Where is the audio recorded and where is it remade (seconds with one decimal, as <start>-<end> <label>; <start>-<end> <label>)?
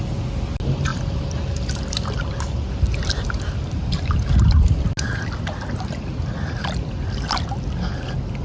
0.0-0.9 recorded; 0.9-2.4 remade; 2.4-8.4 recorded